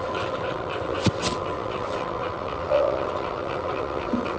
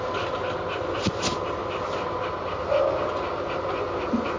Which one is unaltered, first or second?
second